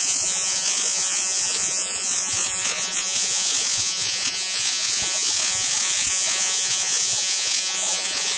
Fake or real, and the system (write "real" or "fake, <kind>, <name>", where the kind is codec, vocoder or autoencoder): fake, vocoder, Vocos